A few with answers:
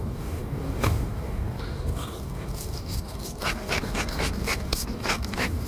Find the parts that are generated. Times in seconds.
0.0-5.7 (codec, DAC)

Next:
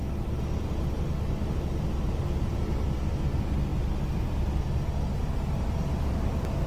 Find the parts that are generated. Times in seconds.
none

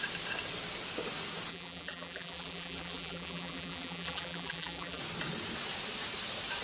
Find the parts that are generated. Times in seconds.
1.5-5.0 (vocoder, BigVGAN v2)

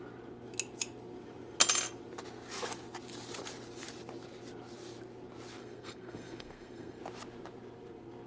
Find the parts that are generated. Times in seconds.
5.6-7.0 (codec, SNAC)